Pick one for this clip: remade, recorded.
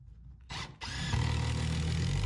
recorded